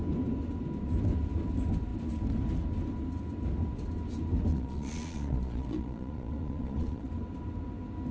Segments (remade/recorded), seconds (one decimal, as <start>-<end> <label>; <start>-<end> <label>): 0.0-4.5 recorded; 4.5-7.1 remade; 7.1-8.1 recorded